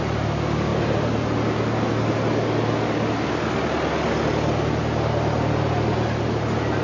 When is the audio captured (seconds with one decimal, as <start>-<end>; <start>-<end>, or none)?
0.0-6.8